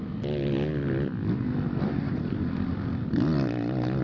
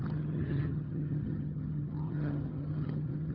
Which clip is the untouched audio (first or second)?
first